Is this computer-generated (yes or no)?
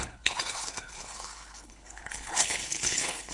yes